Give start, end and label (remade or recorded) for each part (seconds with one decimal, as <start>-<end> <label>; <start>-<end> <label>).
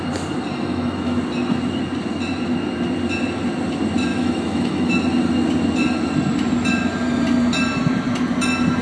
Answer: 0.0-0.5 recorded; 0.5-1.2 remade; 1.2-4.1 recorded; 4.1-4.9 remade; 4.9-8.8 recorded